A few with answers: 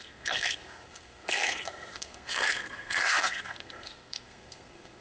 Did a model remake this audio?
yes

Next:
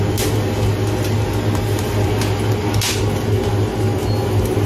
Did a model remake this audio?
no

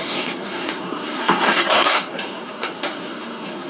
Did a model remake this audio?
yes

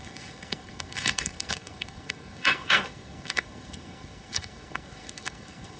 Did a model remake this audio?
yes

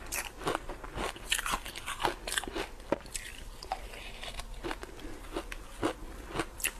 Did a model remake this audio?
no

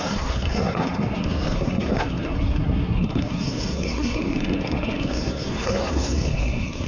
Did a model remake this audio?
yes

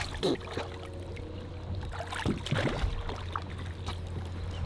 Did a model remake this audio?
no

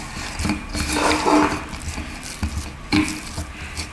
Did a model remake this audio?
no